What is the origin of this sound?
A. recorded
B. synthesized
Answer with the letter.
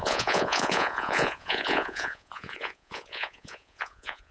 B